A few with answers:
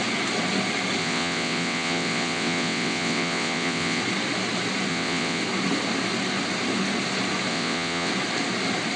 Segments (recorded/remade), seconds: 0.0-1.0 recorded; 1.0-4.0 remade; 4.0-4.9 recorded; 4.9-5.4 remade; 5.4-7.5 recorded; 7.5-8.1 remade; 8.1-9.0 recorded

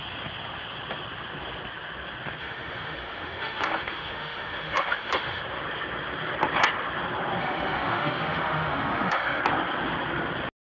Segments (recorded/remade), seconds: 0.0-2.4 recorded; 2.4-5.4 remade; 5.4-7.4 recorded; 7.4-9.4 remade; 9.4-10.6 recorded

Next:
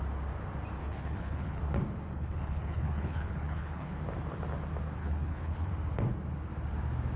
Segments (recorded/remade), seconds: 0.0-0.8 recorded; 0.8-1.6 remade; 1.6-2.1 recorded; 2.1-3.9 remade; 3.9-5.0 recorded; 5.0-5.7 remade; 5.7-7.2 recorded